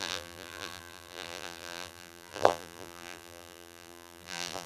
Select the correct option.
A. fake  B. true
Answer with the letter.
A